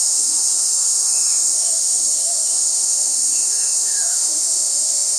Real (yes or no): no